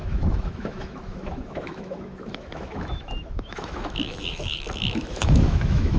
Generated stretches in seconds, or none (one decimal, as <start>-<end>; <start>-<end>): 0.0-6.0